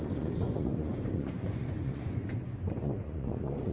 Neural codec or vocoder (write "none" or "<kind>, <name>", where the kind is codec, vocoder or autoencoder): vocoder, Vocos